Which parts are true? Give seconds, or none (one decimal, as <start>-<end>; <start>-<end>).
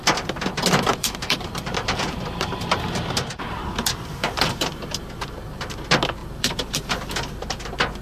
0.0-0.9; 4.7-6.2; 6.9-8.0